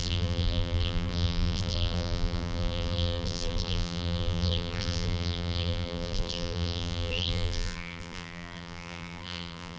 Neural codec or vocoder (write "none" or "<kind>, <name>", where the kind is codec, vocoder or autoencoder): vocoder, BigVGAN v2